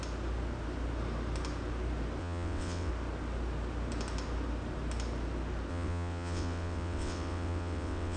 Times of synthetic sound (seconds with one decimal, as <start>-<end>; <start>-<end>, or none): 2.2-2.9; 5.7-8.2